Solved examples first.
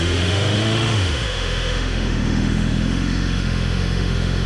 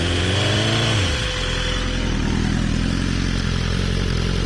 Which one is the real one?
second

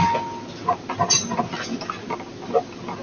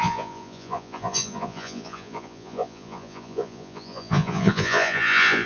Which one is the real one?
first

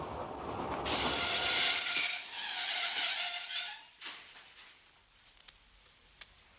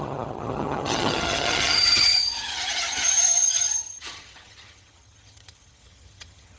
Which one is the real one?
first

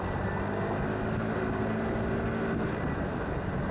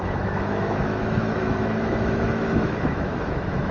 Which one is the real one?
first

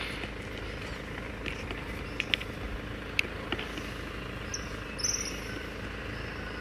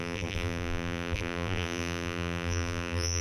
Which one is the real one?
first